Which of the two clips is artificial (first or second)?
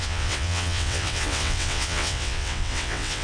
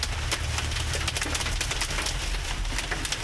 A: first